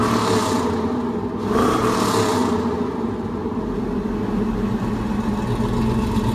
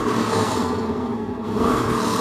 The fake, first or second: second